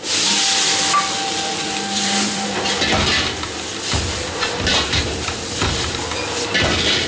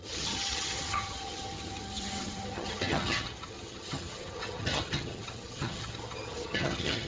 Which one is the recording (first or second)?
first